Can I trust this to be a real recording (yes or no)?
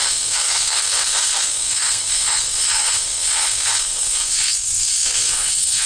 no